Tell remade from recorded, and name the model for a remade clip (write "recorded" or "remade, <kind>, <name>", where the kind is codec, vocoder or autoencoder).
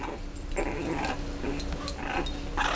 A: recorded